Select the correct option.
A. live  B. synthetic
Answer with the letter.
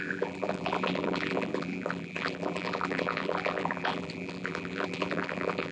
B